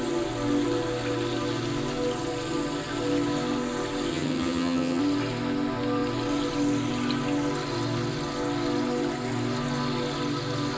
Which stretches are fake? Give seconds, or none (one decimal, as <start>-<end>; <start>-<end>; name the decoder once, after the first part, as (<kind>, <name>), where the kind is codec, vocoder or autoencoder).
4.1-5.0 (vocoder, HiFi-GAN)